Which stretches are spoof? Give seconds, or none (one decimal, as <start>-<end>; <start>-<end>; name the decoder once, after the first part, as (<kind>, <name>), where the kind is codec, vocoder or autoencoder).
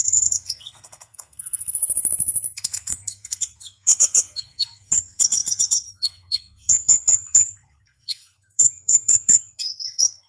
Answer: 0.0-10.3 (codec, SNAC)